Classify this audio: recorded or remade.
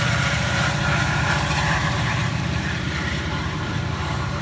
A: remade